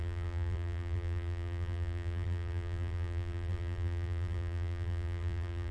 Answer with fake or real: fake